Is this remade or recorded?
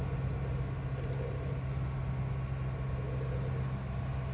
recorded